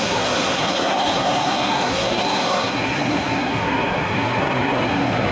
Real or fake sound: fake